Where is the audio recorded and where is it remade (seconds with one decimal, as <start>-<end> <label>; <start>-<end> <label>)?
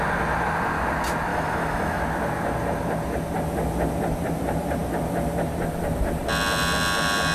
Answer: 0.0-1.3 recorded; 1.3-2.0 remade; 2.0-7.3 recorded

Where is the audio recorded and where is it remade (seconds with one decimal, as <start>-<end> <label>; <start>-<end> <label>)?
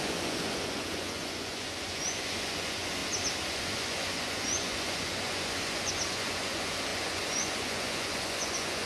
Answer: 0.0-3.0 remade; 3.0-3.5 recorded; 3.5-8.9 remade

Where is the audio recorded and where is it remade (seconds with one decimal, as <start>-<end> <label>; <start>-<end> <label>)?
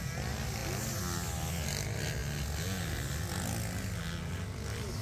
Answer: 0.0-5.0 recorded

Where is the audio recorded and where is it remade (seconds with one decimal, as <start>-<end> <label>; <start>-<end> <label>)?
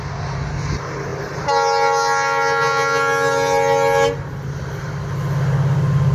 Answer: 0.0-6.1 recorded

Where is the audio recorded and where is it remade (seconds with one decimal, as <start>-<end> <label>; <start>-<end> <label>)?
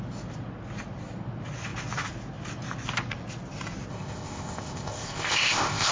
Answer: 0.0-3.9 recorded; 3.9-5.9 remade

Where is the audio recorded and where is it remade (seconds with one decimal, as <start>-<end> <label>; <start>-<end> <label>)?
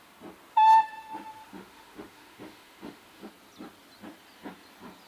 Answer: 0.0-0.5 recorded; 0.5-3.3 remade; 3.3-5.1 recorded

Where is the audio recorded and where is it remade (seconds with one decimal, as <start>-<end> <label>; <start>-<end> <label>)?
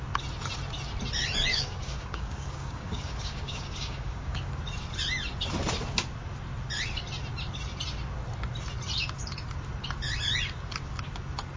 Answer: 0.0-1.5 recorded; 1.5-4.6 remade; 4.6-11.6 recorded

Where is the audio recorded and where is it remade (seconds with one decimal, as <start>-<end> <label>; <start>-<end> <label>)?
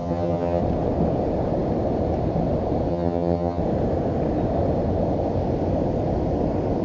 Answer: 0.0-0.6 remade; 0.6-2.9 recorded; 2.9-3.6 remade; 3.6-6.8 recorded